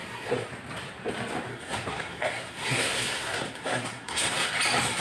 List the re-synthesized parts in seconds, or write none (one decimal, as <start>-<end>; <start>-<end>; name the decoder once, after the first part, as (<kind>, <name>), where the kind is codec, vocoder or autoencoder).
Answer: 0.0-0.5 (codec, SNAC); 1.5-4.5